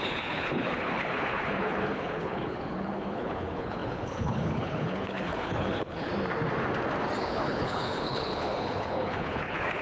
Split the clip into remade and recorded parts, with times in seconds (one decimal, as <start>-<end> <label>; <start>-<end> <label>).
0.0-6.1 remade; 6.1-7.2 recorded; 7.2-9.8 remade